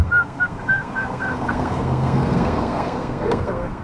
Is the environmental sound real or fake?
fake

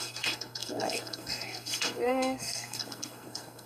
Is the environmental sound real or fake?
fake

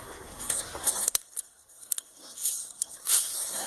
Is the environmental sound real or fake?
fake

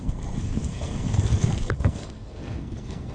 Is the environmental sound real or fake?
fake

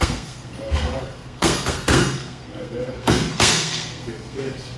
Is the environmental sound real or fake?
fake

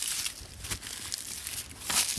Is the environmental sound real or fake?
real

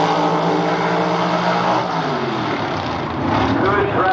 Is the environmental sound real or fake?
real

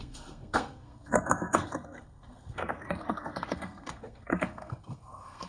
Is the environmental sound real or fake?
fake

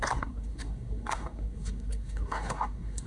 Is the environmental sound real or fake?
fake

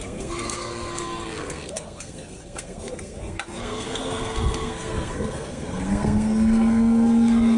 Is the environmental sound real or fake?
fake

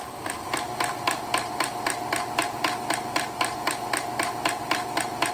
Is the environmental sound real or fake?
real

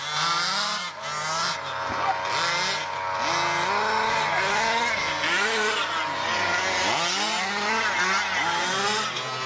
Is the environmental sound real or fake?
real